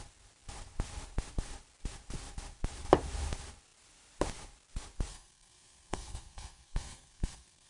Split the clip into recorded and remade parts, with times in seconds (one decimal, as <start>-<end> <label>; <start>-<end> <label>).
0.0-5.1 recorded; 5.1-7.7 remade